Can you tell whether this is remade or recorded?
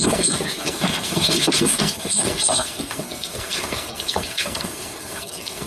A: remade